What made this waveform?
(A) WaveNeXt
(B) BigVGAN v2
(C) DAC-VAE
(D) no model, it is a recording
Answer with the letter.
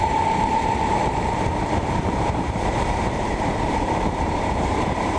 B